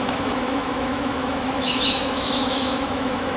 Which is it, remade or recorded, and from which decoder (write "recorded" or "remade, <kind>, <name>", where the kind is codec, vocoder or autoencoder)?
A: remade, autoencoder, DAC-VAE